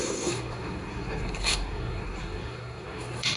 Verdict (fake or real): fake